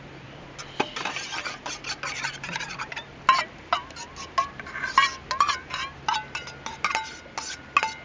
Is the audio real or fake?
real